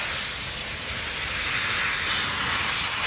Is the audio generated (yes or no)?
no